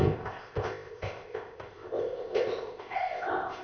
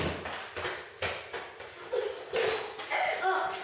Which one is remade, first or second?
first